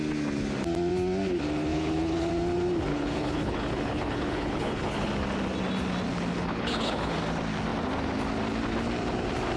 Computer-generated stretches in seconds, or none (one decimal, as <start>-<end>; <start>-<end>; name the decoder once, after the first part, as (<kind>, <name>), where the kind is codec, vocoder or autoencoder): 1.7-2.3 (codec, HILCodec); 2.9-5.1; 6.3-7.2